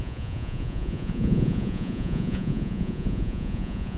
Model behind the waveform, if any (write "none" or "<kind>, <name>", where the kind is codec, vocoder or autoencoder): vocoder, Vocos